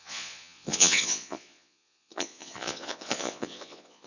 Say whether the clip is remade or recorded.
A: remade